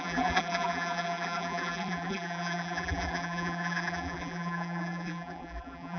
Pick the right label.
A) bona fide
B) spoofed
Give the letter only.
B